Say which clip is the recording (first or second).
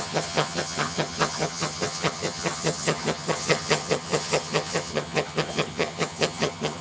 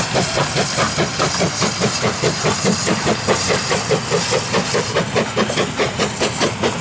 second